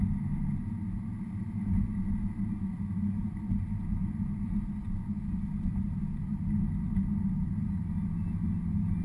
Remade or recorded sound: recorded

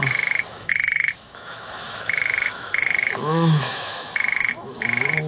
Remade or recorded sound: remade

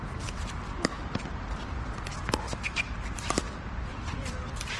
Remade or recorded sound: recorded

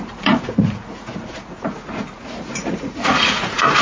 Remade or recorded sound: remade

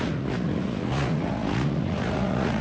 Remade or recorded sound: remade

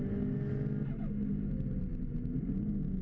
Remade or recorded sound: recorded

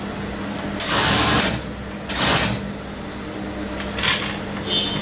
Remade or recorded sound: recorded